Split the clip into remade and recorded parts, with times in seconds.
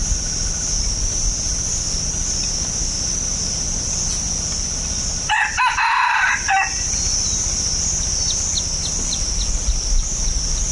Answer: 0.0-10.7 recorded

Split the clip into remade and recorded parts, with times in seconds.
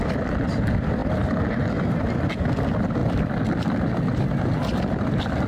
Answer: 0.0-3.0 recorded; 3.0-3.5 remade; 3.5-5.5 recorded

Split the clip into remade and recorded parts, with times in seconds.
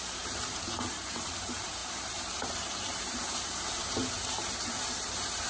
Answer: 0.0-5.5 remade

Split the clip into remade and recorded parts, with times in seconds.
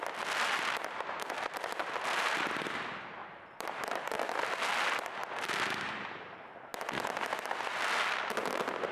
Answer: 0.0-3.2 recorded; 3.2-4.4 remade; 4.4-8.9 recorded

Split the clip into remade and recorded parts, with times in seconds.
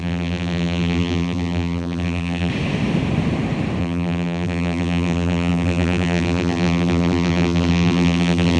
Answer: 0.0-2.5 remade; 2.5-3.8 recorded; 3.8-8.6 remade